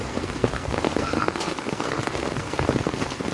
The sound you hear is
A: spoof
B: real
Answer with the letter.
A